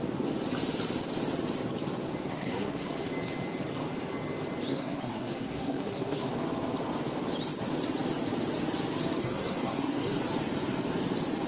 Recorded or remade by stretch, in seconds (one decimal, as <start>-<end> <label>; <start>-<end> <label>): 0.0-2.3 recorded; 2.3-2.9 remade; 2.9-4.7 recorded; 4.7-6.2 remade; 6.2-9.2 recorded; 9.2-10.2 remade; 10.2-11.5 recorded